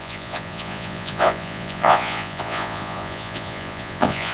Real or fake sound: fake